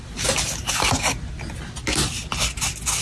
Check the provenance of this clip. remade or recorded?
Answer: recorded